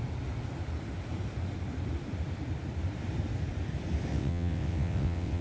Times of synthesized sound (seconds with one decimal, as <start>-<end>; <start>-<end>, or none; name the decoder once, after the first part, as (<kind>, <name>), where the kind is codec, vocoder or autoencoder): 4.1-5.4 (vocoder, WaveNeXt)